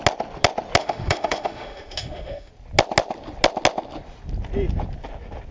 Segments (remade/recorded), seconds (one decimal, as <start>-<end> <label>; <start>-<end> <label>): 0.0-0.8 recorded; 0.8-2.5 remade; 2.5-5.5 recorded